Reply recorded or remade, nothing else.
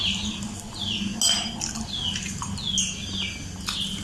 recorded